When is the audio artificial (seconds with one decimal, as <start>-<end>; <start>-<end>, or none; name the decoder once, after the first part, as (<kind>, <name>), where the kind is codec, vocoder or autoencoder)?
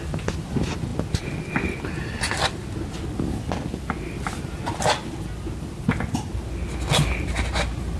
none